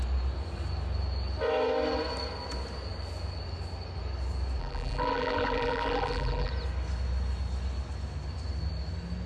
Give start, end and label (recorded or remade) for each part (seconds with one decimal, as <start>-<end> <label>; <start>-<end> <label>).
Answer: 0.0-4.6 recorded; 4.6-6.5 remade; 6.5-9.3 recorded